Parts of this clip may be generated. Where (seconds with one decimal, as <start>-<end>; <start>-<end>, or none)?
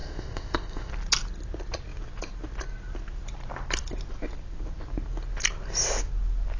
0.0-0.9